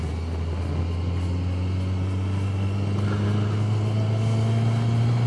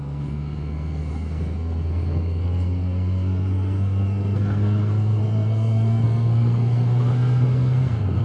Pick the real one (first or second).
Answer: first